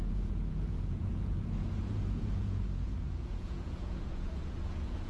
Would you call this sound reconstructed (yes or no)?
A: yes